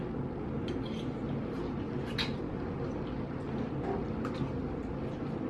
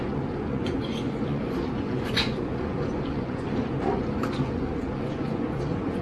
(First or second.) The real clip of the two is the first